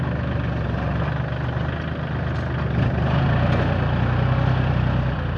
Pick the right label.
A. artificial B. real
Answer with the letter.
B